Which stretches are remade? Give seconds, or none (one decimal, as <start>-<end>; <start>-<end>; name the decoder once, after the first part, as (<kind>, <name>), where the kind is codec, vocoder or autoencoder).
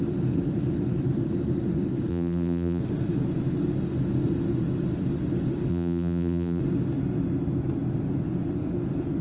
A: 2.1-2.8 (vocoder, BigVGAN v2); 5.7-6.6